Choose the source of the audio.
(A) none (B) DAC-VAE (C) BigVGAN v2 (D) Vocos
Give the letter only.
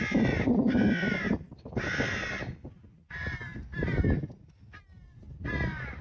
A